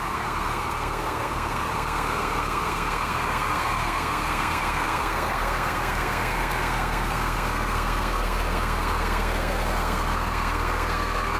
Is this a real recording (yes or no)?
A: no